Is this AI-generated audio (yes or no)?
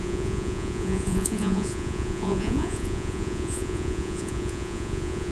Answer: yes